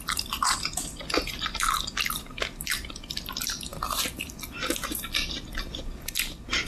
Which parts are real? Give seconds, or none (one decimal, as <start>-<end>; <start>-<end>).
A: none